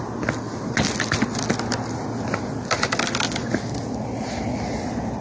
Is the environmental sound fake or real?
real